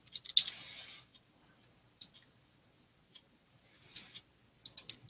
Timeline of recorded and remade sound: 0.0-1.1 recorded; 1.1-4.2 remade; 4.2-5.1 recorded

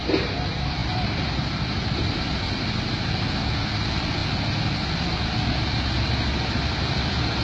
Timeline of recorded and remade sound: 0.0-7.4 recorded

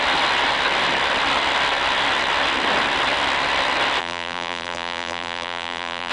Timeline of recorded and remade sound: 0.0-4.0 recorded; 4.0-6.1 remade

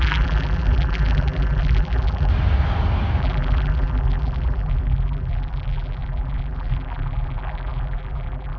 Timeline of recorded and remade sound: 0.0-2.3 remade; 2.3-3.2 recorded; 3.2-8.6 remade

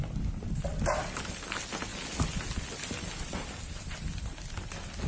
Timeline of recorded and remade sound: 0.0-5.1 recorded

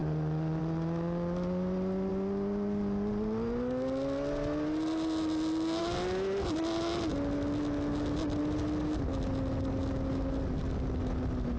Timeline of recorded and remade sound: 0.0-11.6 recorded